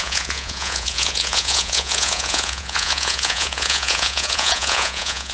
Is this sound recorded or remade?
remade